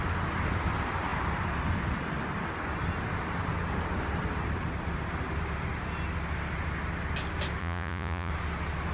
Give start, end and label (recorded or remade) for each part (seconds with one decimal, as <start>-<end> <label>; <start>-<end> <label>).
0.0-7.6 recorded; 7.6-8.3 remade; 8.3-8.9 recorded